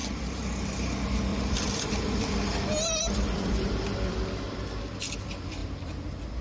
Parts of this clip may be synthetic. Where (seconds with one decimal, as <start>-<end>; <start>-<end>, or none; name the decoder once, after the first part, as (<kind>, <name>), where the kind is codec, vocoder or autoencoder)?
1.3-4.8 (vocoder, BigVGAN v2); 5.6-6.4